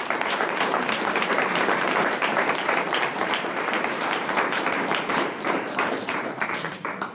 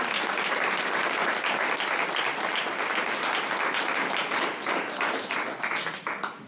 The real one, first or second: second